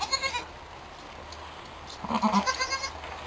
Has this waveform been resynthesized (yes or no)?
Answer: no